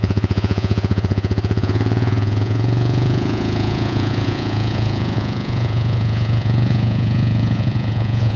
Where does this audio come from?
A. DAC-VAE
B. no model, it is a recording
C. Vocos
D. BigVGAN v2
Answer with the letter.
C